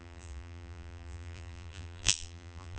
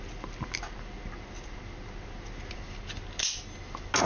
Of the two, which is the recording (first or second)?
second